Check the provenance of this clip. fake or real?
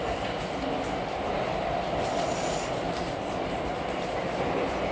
real